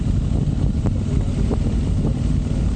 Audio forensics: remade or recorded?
recorded